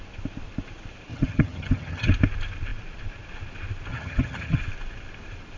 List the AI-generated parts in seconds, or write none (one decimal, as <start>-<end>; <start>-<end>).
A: 1.1-2.1; 3.9-4.6